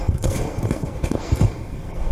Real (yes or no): no